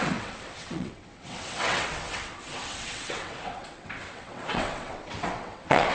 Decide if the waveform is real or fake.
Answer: fake